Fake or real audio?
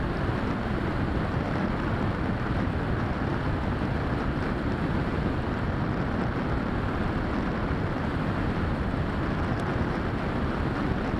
real